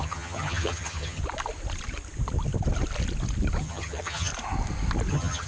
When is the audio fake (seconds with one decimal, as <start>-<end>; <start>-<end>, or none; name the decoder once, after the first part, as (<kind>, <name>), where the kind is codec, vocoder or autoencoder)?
0.0-1.2 (vocoder, HiFi-GAN); 3.6-4.3; 5.1-5.5